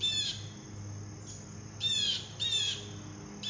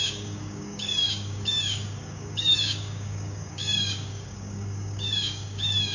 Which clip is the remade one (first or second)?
second